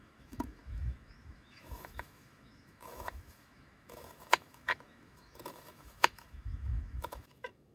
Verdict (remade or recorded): remade